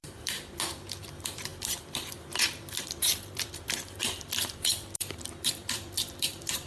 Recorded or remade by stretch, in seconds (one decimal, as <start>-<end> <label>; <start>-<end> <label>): 0.0-6.7 remade